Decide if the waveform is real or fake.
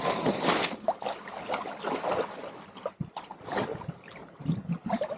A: real